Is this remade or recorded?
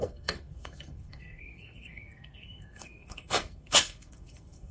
remade